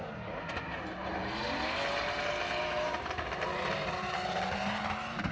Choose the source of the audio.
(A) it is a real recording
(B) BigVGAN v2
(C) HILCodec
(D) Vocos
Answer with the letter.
A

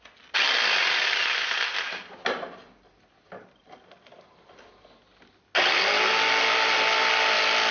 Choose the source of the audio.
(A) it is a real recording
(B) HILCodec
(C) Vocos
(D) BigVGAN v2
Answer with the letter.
A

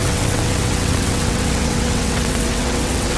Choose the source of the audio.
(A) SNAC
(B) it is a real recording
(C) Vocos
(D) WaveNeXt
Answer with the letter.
D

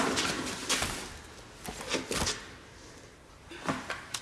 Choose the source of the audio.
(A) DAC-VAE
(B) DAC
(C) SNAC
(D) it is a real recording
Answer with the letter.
D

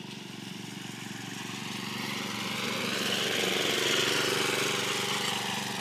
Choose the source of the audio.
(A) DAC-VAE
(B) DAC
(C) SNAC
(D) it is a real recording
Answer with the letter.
D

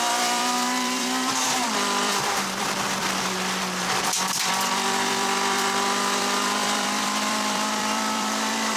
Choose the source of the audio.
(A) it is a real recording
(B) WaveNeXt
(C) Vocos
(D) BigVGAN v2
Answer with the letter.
D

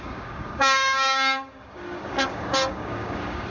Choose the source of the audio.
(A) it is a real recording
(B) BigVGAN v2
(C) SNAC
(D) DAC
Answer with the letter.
D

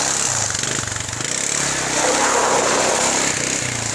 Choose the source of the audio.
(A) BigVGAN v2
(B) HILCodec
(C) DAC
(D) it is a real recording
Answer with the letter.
D